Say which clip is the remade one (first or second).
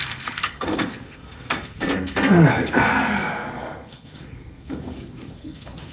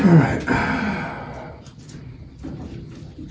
first